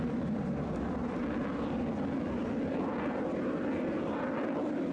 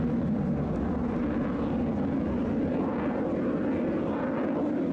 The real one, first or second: second